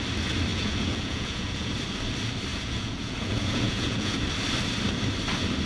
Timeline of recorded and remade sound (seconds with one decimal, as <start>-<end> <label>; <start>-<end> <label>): 0.0-0.5 recorded; 0.5-1.7 remade; 1.7-2.5 recorded; 2.5-4.2 remade; 4.2-5.7 recorded